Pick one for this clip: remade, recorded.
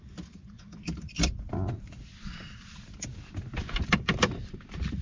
remade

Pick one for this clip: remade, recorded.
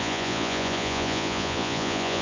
remade